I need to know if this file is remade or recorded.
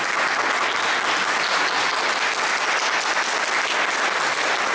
recorded